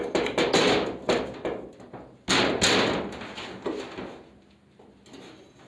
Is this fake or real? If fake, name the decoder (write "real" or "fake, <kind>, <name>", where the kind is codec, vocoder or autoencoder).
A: real